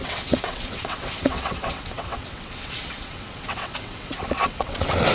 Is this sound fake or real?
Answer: fake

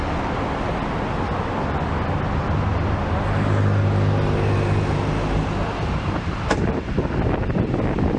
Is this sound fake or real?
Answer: real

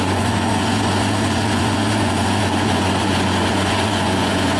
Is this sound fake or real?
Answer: fake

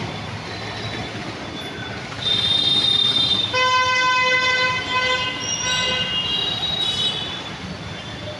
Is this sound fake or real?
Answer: real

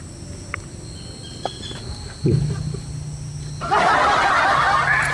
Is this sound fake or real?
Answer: real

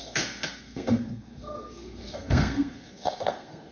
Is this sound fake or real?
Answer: fake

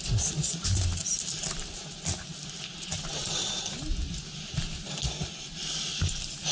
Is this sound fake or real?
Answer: real